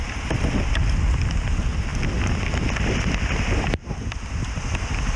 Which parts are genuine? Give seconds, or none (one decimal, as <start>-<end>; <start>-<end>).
0.0-5.2